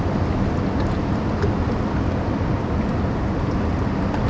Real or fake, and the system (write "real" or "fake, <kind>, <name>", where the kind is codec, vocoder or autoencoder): real